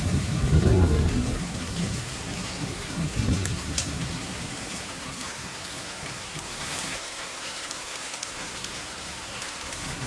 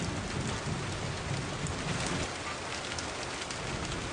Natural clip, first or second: second